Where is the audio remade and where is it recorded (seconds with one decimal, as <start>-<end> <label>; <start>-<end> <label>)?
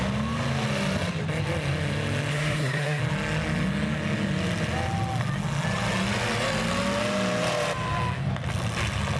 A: 0.0-2.3 recorded; 2.3-3.0 remade; 3.0-9.2 recorded